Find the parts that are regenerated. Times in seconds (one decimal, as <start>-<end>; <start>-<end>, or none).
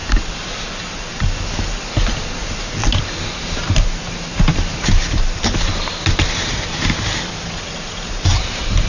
3.0-8.9